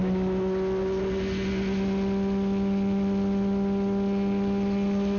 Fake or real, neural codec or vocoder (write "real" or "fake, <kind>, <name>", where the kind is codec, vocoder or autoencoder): real